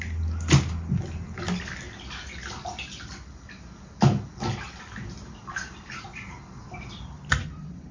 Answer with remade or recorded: recorded